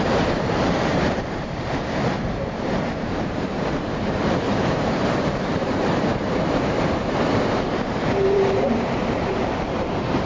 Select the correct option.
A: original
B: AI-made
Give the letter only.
B